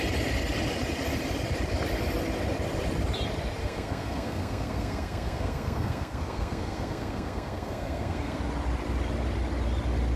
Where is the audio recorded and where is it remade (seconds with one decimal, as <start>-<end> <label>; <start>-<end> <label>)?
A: 0.0-3.6 recorded; 3.6-8.4 remade; 8.4-10.2 recorded